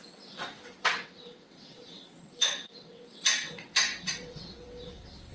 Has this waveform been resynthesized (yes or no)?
yes